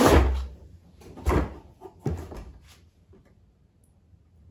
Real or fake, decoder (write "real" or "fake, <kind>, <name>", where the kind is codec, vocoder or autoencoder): real